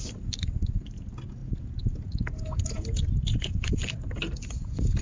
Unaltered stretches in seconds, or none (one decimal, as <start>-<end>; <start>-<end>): 0.0-1.4; 3.7-5.0